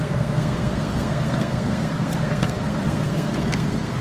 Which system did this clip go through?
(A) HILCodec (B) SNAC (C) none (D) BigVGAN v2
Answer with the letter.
B